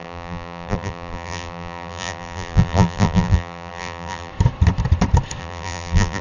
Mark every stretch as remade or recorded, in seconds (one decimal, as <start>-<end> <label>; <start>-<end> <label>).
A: 0.0-4.3 remade; 4.3-5.4 recorded; 5.4-6.2 remade